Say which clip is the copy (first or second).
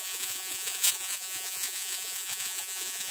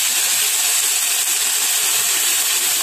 first